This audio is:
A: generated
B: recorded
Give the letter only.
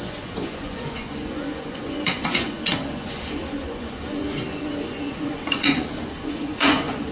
A